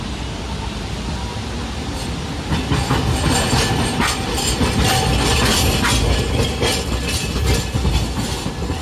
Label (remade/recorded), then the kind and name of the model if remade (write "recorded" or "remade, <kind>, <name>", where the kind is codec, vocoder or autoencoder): recorded